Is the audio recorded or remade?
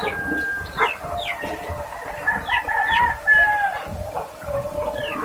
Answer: remade